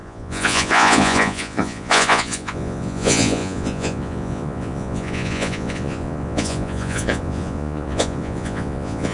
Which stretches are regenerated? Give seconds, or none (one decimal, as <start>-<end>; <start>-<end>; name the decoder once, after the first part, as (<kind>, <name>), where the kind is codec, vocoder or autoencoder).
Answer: 0.0-9.1 (vocoder, Vocos)